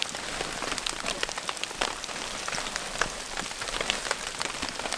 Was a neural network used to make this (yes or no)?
no